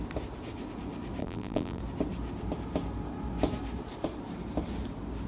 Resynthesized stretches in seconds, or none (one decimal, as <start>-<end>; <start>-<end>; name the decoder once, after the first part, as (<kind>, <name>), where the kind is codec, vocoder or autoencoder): 1.2-1.8 (vocoder, BigVGAN v2)